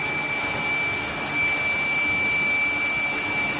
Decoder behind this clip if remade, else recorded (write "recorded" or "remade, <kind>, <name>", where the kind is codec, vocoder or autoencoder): recorded